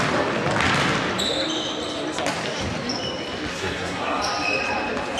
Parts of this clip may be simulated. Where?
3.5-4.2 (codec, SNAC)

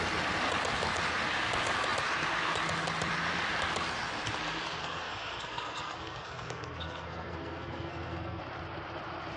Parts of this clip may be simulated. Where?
4.8-8.4 (codec, SNAC)

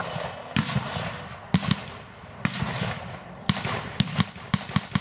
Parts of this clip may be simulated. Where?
none

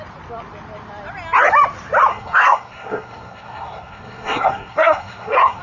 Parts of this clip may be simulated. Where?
2.1-5.6 (codec, SNAC)

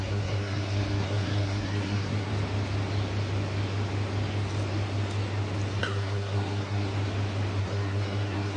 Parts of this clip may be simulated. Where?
0.0-2.3 (codec, SNAC); 5.8-6.9; 7.6-8.6

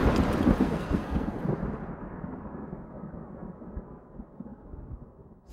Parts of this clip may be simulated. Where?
0.6-1.4 (codec, SNAC); 2.0-5.5